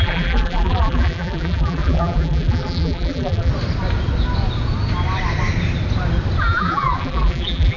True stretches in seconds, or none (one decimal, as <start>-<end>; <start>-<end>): 3.5-6.4